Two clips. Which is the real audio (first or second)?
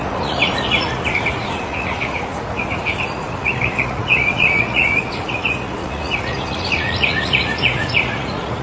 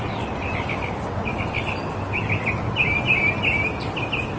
second